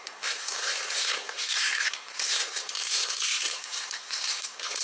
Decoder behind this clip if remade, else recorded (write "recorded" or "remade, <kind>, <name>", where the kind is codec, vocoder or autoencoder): remade, codec, SNAC